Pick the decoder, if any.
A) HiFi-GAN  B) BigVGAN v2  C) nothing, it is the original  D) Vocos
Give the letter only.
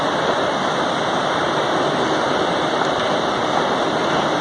C